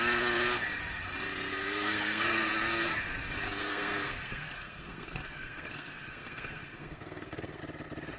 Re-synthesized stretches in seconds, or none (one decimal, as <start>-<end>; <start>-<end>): 1.5-2.5; 3.6-7.6